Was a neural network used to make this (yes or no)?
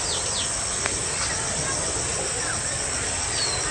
no